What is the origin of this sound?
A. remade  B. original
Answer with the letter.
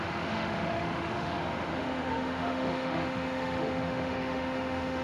A